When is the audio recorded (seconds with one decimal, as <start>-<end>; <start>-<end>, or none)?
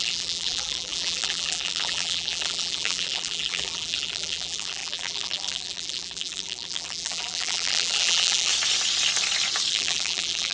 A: 8.5-9.7